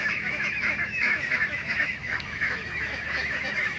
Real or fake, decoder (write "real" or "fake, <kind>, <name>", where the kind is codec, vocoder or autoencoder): fake, autoencoder, DAC-VAE